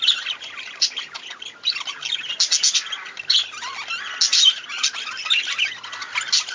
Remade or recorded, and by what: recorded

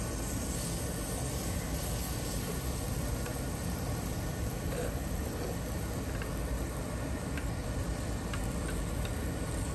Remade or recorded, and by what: recorded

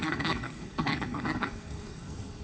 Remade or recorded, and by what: remade, codec, SNAC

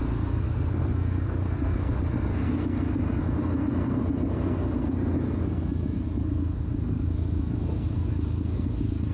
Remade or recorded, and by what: remade, codec, SNAC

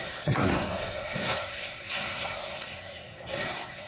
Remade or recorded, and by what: remade, codec, SNAC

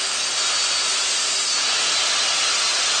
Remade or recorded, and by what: recorded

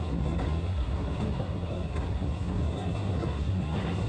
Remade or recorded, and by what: remade, codec, SNAC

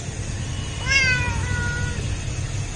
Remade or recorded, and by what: recorded